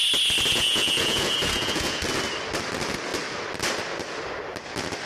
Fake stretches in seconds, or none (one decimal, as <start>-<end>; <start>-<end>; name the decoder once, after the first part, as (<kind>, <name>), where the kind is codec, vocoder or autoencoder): 0.5-2.0 (vocoder, Vocos)